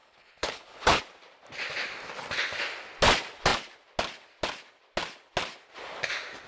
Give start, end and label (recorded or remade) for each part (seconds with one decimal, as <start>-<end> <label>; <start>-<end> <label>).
0.0-1.0 remade; 1.0-6.5 recorded